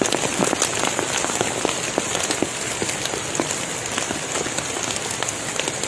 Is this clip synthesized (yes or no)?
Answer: no